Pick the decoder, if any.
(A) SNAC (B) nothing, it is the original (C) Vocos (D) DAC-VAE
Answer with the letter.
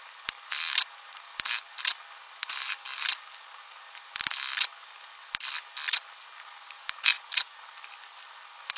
B